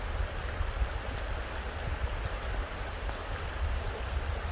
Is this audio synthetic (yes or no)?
no